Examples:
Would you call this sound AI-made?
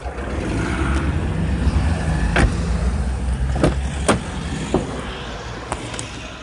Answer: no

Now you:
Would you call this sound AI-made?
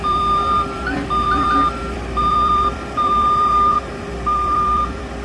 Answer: yes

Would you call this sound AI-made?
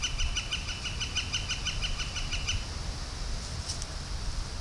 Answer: no